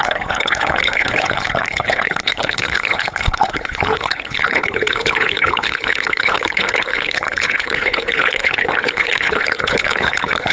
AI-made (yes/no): yes